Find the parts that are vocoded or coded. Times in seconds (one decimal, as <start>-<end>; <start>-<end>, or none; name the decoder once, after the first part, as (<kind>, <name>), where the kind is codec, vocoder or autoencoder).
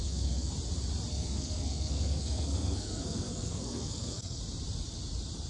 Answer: 0.0-0.5 (codec, SNAC); 1.1-4.4